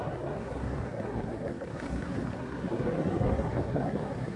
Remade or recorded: remade